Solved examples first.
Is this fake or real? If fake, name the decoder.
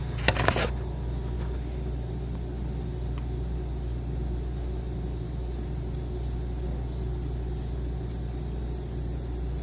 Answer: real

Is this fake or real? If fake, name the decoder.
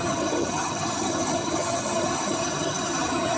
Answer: fake, vocoder, HiFi-GAN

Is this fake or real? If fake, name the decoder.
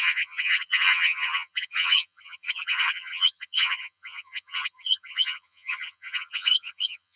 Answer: fake, vocoder, HiFi-GAN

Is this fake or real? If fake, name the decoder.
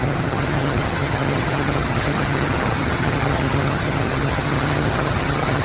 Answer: fake, vocoder, HiFi-GAN